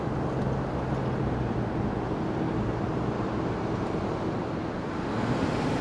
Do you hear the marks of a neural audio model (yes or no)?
no